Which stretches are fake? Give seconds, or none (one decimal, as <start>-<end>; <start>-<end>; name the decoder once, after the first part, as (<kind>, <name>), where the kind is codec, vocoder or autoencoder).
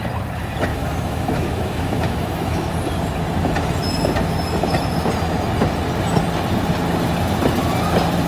0.7-2.7 (autoencoder, DAC-VAE)